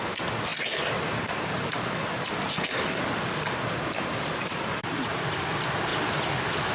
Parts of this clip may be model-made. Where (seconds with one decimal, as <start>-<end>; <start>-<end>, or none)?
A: none